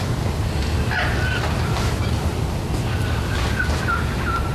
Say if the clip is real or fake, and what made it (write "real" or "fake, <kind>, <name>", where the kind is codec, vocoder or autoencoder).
real